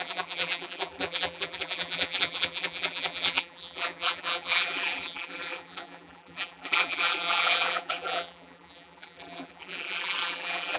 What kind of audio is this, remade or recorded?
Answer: remade